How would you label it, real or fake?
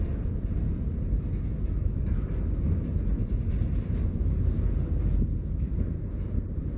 real